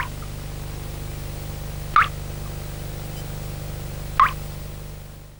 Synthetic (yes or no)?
no